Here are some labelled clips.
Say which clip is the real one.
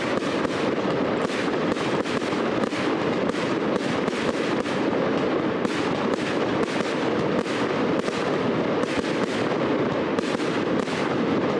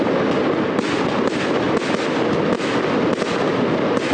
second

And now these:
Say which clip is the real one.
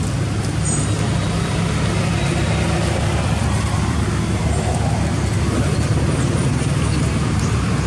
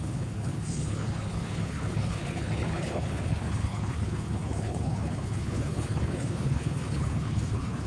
first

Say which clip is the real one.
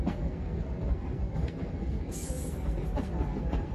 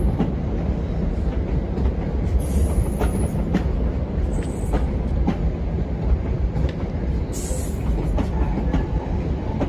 second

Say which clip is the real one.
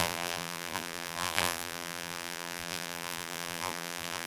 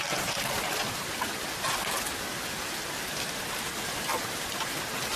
second